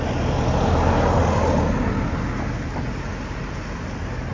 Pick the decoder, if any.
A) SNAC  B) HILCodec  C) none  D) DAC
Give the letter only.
C